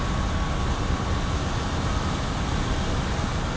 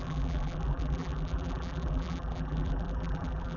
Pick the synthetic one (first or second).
second